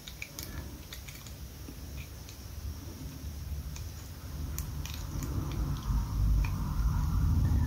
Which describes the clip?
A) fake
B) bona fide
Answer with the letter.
B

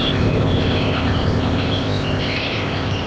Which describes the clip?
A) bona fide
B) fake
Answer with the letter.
B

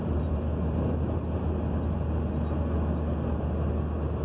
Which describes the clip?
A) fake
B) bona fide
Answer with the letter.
B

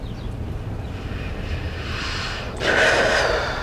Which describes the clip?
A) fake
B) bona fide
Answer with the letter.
B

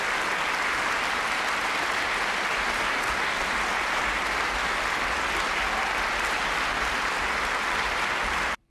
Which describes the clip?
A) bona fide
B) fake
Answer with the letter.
A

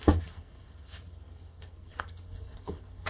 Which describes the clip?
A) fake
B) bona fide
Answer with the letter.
A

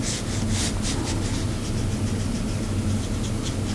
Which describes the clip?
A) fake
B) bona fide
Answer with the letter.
B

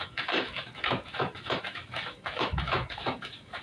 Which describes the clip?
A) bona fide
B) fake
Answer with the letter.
B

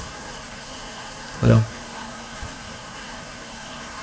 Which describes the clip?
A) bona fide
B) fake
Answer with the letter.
B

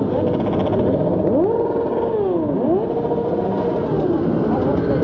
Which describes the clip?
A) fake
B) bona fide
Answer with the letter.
B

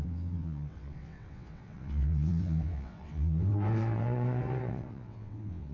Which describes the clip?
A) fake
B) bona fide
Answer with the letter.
A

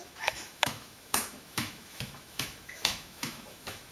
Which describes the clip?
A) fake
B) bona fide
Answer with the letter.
A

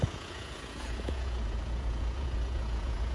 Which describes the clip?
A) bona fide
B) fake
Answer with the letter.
B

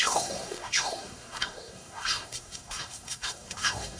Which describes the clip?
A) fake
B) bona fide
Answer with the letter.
A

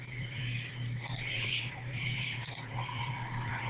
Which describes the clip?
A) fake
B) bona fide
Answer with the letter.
A